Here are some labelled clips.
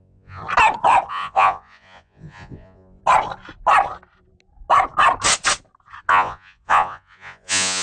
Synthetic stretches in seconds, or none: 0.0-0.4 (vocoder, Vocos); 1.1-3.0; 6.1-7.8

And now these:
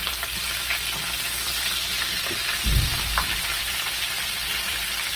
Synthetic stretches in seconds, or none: none

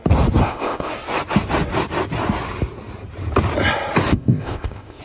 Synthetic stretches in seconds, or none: 0.4-0.9 (codec, ZipCodec); 4.1-5.0

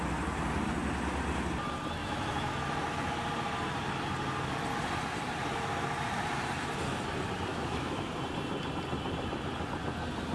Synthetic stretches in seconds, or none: 2.0-2.5 (autoencoder, DAC-VAE); 7.5-8.1

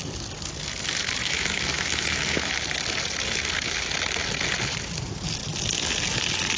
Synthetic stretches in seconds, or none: 1.2-2.5 (autoencoder, DAC-VAE)

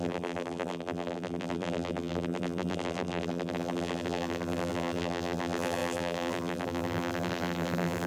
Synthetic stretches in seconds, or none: 0.0-8.1 (vocoder, BigVGAN v2)

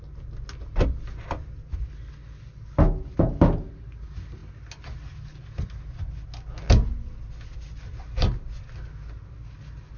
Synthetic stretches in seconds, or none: none